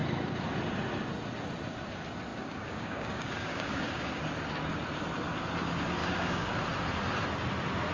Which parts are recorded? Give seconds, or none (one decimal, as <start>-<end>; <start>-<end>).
0.0-2.3; 4.2-6.0; 6.6-7.9